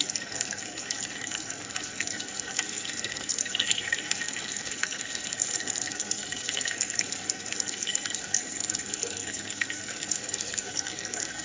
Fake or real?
fake